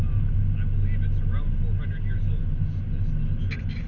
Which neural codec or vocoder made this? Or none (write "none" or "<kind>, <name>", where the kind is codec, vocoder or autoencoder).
none